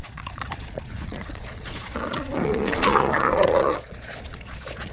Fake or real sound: fake